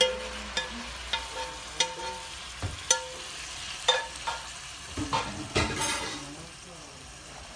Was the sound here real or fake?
real